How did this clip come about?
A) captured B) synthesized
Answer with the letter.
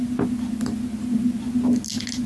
A